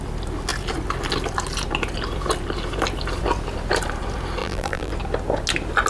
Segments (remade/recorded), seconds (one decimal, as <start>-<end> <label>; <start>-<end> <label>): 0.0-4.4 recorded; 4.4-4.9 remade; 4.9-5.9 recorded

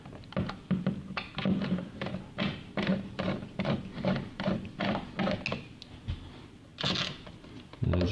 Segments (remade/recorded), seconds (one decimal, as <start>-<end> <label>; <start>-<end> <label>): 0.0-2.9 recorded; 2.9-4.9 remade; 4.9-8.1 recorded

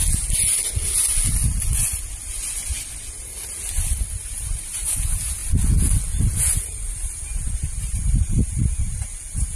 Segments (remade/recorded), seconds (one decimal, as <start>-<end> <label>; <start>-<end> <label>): 0.0-4.1 recorded; 4.1-5.4 remade; 5.4-6.2 recorded; 6.2-9.6 remade

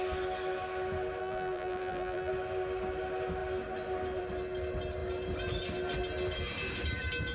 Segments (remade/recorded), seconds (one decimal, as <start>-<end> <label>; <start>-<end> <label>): 0.0-1.2 recorded; 1.2-2.3 remade; 2.3-7.3 recorded

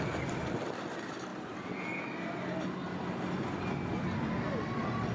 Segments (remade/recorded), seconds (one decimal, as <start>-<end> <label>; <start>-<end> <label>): 0.0-1.3 remade; 1.3-4.4 recorded; 4.4-5.1 remade

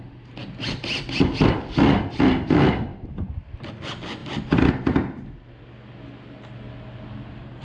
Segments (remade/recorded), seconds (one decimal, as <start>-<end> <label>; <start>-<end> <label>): 0.0-0.4 recorded; 0.4-1.0 remade; 1.0-2.9 recorded; 2.9-3.7 remade; 3.7-4.2 recorded; 4.2-4.7 remade; 4.7-7.6 recorded

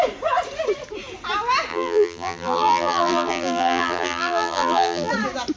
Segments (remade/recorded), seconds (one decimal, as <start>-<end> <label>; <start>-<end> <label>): 0.0-1.7 recorded; 1.7-5.1 remade; 5.1-5.6 recorded

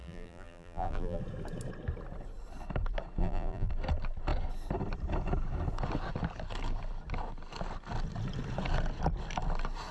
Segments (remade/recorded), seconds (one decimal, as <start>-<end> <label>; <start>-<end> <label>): 0.0-1.2 remade; 1.2-3.2 recorded; 3.2-3.7 remade; 3.7-9.9 recorded